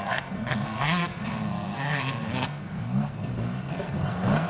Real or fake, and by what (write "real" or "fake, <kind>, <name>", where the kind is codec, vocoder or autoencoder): fake, codec, SNAC